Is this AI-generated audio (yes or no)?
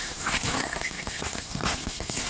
yes